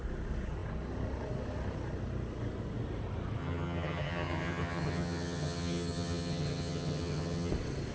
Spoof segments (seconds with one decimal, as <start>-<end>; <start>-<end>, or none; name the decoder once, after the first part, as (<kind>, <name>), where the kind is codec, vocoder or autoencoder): 3.4-7.5 (vocoder, HiFi-GAN)